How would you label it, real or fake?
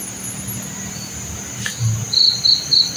real